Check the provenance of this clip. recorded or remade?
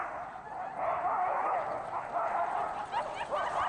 recorded